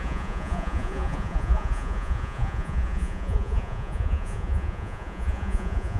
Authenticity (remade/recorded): remade